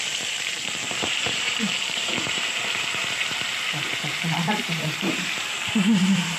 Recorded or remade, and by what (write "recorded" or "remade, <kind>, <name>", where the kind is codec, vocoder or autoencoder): remade, vocoder, BigVGAN v2